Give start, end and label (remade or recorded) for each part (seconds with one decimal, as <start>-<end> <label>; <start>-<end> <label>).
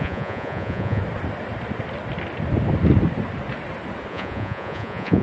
0.0-1.0 remade; 1.0-4.1 recorded; 4.1-5.2 remade